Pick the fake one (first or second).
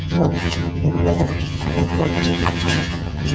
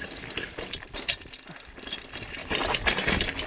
first